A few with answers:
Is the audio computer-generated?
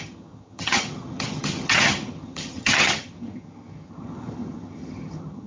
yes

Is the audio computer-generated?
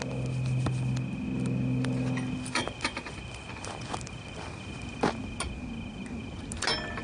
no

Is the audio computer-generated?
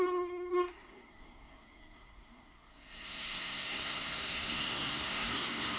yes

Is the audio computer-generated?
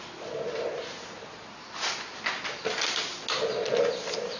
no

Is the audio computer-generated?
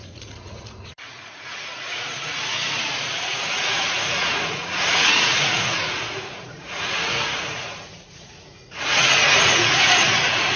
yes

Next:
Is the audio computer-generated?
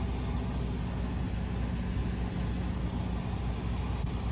no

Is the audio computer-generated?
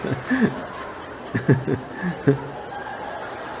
no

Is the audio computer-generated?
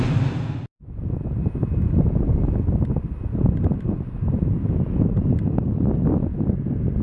no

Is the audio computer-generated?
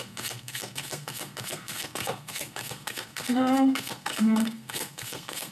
yes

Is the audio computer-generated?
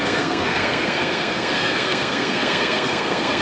yes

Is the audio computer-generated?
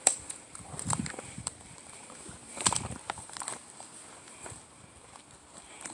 yes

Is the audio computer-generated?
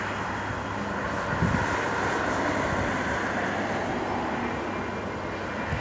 no